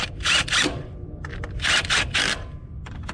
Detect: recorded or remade recorded